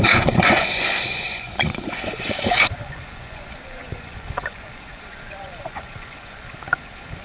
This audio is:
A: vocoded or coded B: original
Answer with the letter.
A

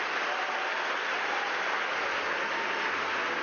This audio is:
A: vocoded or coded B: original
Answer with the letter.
B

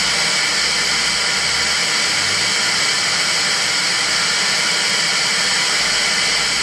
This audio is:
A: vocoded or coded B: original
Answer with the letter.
B